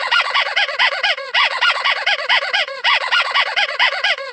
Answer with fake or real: fake